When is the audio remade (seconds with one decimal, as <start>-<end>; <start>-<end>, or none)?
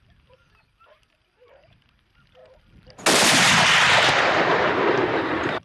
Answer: none